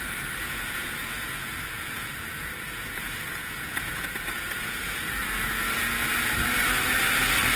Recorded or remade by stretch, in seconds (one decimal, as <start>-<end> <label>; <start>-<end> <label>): 0.0-0.4 recorded; 0.4-5.0 remade; 5.0-7.6 recorded